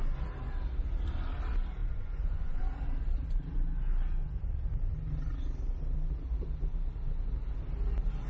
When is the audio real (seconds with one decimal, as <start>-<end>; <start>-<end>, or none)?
0.0-1.8; 2.6-8.3